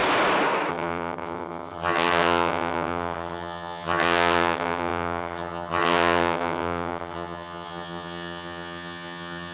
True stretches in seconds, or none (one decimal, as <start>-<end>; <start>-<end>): 0.0-0.7